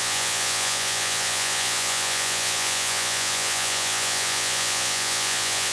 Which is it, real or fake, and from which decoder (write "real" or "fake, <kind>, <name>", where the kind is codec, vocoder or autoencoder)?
fake, vocoder, Vocos